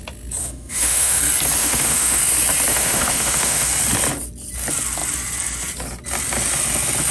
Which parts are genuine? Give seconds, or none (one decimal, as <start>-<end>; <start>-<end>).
0.0-0.4; 1.2-1.6; 2.2-2.7; 3.7-7.1